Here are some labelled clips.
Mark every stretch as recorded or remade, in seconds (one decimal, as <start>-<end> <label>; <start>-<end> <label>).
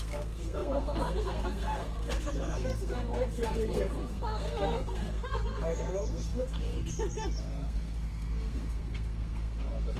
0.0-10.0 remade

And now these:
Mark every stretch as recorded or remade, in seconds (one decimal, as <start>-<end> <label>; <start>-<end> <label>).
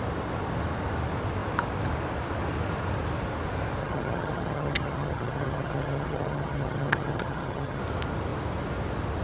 0.0-3.8 recorded; 3.8-7.8 remade; 7.8-9.2 recorded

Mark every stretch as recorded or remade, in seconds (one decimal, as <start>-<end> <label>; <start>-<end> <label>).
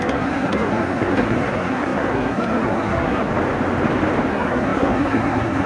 0.0-3.3 remade; 3.3-4.3 recorded; 4.3-5.7 remade